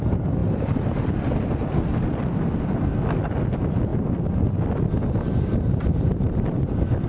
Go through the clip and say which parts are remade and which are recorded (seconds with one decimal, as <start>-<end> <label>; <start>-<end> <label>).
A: 0.0-7.1 recorded